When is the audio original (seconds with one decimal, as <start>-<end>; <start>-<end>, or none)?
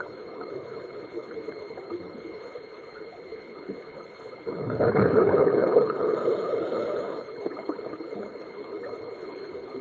none